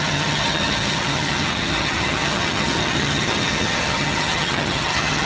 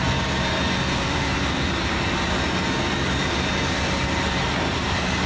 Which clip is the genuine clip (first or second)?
second